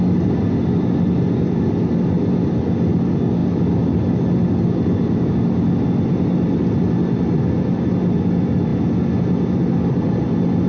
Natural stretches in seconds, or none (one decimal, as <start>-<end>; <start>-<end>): 0.0-10.7